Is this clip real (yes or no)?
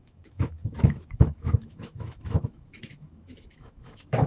no